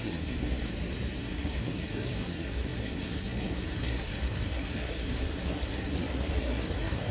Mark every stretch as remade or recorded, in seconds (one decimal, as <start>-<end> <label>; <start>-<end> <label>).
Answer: 0.0-0.7 remade; 0.7-1.2 recorded; 1.2-7.1 remade